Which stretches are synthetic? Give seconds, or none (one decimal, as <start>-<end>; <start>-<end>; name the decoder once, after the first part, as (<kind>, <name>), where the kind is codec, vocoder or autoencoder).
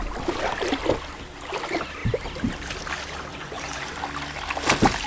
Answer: 3.3-4.0 (vocoder, Vocos)